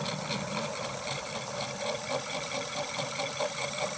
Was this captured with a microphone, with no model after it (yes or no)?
yes